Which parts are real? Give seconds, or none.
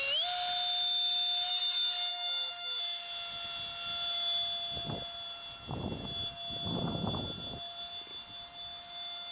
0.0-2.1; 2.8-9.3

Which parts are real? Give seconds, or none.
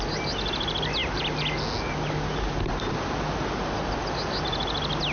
0.0-5.1